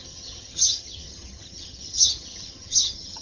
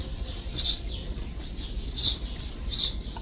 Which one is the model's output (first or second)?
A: first